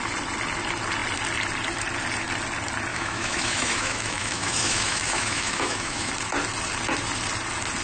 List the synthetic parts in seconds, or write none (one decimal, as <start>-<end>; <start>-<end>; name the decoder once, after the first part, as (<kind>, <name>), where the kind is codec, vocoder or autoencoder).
2.9-6.1 (autoencoder, DAC-VAE)